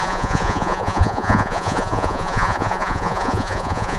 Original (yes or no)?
no